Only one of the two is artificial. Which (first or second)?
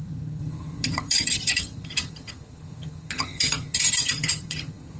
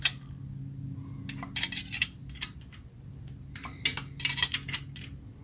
first